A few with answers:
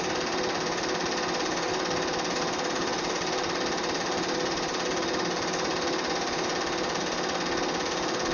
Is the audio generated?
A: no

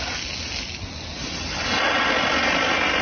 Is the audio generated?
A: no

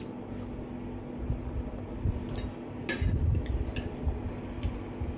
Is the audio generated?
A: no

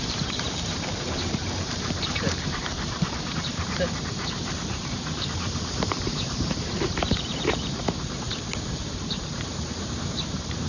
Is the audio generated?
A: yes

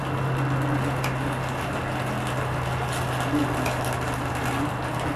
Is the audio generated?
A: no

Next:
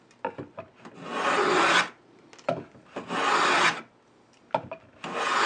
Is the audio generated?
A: no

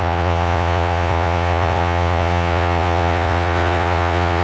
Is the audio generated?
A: yes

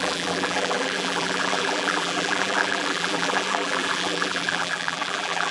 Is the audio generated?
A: yes